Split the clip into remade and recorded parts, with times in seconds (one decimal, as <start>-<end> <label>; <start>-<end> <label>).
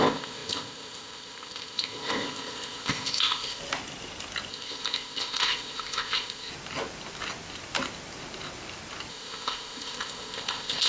0.0-3.6 remade; 3.6-4.5 recorded; 4.5-6.5 remade; 6.5-9.1 recorded; 9.1-10.9 remade